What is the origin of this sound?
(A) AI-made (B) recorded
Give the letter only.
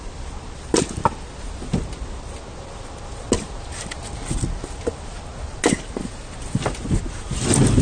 B